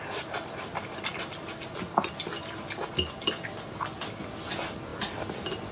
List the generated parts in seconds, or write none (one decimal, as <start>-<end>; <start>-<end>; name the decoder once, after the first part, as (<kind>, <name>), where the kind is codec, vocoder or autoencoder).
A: none